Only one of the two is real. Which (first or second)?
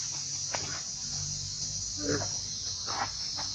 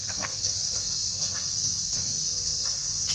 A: first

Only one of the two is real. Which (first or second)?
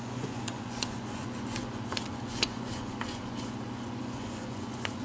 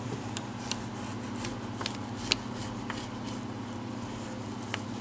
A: second